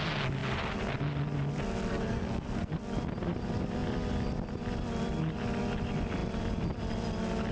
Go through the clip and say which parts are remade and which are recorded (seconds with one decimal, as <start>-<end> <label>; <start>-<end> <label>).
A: 0.0-1.9 recorded; 1.9-2.7 remade; 2.7-7.5 recorded